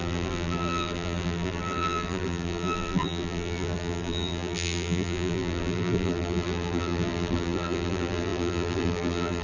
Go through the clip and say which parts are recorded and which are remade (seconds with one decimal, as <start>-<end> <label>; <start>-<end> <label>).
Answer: 0.0-9.4 remade